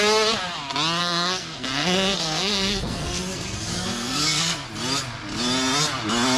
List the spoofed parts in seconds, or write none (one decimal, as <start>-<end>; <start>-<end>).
1.0-4.7